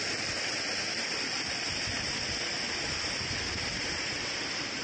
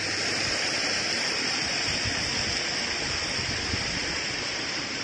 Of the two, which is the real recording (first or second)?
first